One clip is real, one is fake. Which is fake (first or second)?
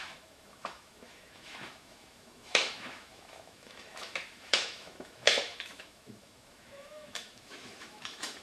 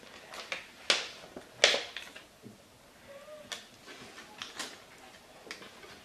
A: first